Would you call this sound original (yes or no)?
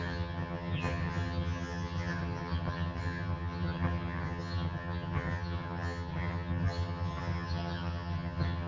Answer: no